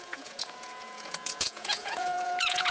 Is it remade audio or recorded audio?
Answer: remade